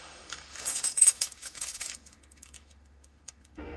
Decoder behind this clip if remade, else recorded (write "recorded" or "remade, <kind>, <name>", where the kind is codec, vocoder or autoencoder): remade, autoencoder, DAC-VAE